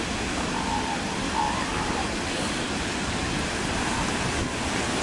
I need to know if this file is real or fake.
real